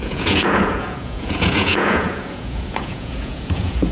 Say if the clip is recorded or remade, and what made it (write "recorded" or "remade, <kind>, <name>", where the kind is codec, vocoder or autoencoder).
remade, vocoder, Vocos